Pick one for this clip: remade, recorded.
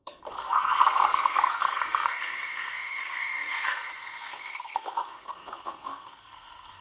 remade